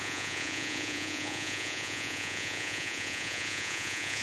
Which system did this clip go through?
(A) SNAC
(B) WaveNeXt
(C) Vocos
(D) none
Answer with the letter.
C